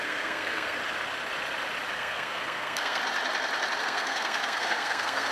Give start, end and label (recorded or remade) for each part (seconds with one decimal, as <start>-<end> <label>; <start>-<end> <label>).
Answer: 0.0-0.8 remade; 0.8-1.9 recorded; 1.9-3.0 remade; 3.0-3.8 recorded; 3.8-5.3 remade